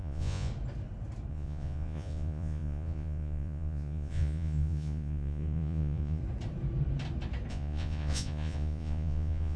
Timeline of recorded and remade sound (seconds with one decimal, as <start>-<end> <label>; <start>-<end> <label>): 0.0-0.5 remade; 0.5-1.3 recorded; 1.3-6.2 remade; 6.2-7.5 recorded; 7.5-9.6 remade